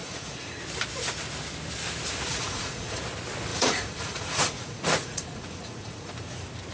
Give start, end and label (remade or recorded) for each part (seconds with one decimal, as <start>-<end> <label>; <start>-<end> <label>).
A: 0.0-0.6 remade; 0.6-2.3 recorded; 2.3-3.0 remade; 3.0-3.5 recorded; 3.5-6.1 remade; 6.1-6.7 recorded